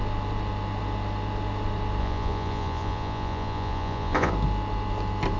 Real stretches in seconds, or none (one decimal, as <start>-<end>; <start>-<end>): 0.0-2.0; 4.3-5.4